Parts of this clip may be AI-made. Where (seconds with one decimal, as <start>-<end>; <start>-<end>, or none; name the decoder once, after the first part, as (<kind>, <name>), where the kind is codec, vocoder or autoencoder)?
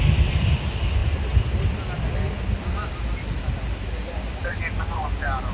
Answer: none